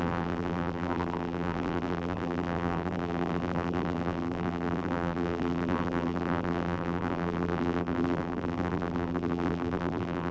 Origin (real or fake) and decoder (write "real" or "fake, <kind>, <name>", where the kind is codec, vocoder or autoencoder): fake, vocoder, BigVGAN v2